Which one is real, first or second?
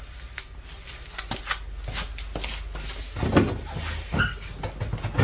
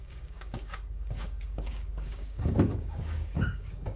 first